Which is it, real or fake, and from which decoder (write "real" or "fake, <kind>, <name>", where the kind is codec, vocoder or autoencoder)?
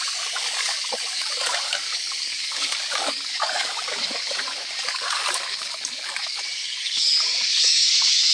fake, codec, DAC